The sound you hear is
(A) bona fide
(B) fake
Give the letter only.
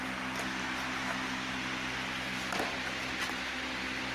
A